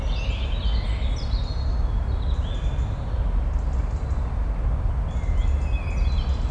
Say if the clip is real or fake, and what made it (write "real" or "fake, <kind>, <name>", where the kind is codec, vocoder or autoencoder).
real